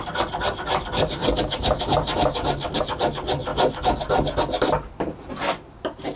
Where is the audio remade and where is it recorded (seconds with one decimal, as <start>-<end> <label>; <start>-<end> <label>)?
0.0-1.2 recorded; 1.2-2.8 remade; 2.8-6.2 recorded